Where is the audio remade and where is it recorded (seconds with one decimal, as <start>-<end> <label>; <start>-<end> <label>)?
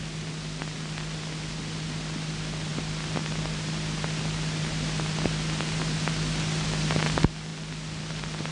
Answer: 0.0-8.5 recorded